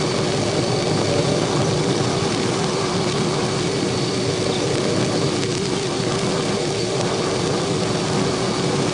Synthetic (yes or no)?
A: no